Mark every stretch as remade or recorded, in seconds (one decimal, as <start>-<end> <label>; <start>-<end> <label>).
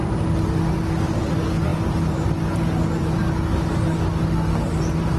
0.0-5.2 recorded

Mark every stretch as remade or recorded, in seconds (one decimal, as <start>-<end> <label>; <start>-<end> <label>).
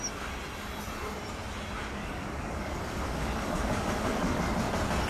0.0-1.8 recorded; 1.8-4.4 remade; 4.4-5.1 recorded